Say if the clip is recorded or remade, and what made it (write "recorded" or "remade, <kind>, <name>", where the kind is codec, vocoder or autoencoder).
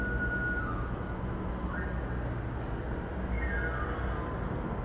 recorded